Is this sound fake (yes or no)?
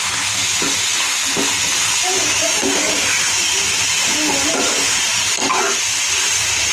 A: no